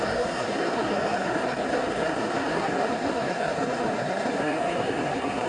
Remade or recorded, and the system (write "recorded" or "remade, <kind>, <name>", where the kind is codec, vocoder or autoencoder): remade, codec, SNAC